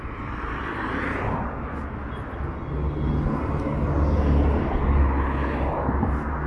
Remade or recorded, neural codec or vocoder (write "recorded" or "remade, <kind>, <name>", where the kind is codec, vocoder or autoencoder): recorded